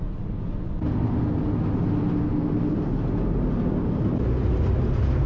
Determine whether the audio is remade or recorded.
recorded